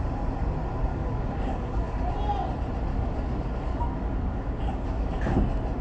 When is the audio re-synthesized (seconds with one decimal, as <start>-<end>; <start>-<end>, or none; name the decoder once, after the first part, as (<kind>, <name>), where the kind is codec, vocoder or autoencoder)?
0.9-2.0 (codec, DAC); 2.9-5.2